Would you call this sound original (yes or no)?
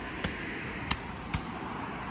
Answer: yes